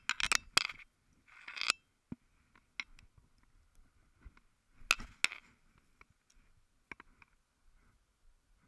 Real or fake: real